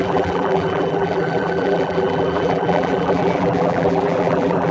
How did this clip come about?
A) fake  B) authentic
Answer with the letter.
A